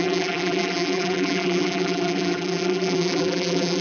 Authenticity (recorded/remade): remade